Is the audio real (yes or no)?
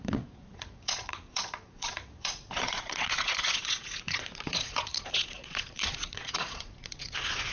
no